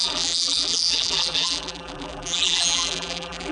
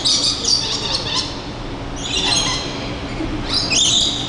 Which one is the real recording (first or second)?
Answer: second